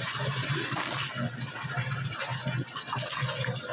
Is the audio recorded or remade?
recorded